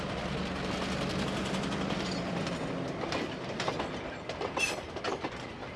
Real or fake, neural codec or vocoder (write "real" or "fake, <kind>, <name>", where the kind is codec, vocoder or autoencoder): real